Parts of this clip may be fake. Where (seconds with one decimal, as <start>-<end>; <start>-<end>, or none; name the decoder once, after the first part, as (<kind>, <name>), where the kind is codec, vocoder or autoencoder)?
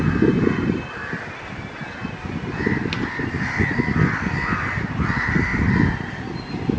none